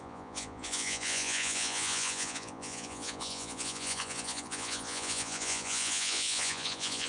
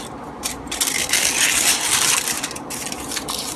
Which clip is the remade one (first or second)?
first